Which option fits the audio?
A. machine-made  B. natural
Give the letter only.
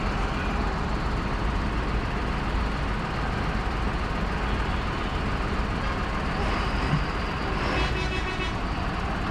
B